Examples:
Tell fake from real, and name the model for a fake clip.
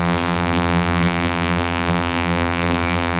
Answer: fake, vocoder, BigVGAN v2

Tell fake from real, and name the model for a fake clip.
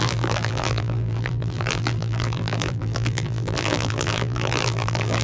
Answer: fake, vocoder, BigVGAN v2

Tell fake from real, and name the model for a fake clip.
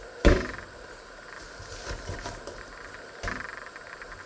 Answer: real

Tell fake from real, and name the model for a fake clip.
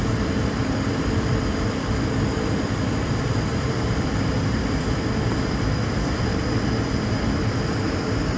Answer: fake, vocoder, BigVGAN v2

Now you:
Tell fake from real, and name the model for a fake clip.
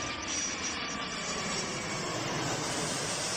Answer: real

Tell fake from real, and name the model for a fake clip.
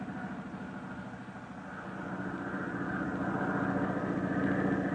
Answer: real